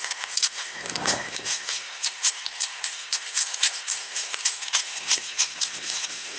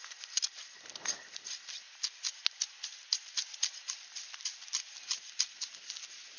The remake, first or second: first